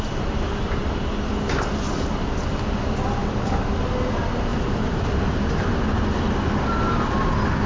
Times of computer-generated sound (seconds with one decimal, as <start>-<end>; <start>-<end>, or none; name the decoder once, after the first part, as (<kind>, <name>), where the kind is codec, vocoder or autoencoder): none

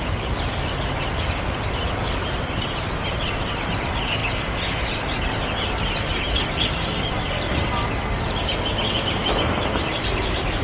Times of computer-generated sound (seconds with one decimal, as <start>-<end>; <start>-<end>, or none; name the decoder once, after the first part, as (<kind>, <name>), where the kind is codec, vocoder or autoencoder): 0.0-4.2 (vocoder, BigVGAN v2); 4.8-10.6

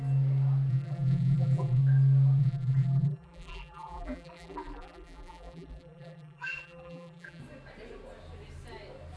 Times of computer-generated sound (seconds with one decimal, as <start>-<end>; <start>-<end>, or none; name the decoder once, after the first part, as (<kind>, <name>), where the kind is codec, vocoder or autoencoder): 0.7-1.8 (vocoder, BigVGAN v2); 2.4-7.4

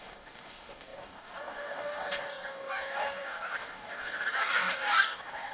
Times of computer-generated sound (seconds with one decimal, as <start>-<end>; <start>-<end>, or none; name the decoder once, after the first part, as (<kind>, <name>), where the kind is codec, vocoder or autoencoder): 0.0-5.5 (codec, DAC)

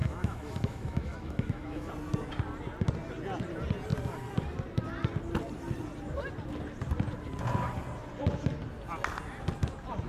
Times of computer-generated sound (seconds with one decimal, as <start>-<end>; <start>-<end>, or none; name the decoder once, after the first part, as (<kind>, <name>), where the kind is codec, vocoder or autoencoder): 0.0-1.9 (autoencoder, DAC-VAE)